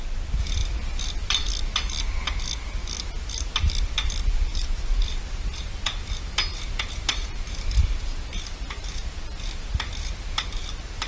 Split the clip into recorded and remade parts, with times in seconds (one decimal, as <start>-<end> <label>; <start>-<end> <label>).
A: 0.0-11.1 recorded